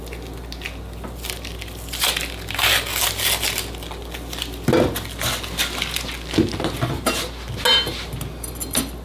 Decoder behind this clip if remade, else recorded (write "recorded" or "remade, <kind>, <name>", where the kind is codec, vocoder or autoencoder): recorded